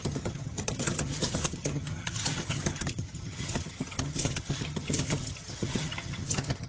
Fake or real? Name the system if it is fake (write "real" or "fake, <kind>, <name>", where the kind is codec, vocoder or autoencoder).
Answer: fake, vocoder, HiFi-GAN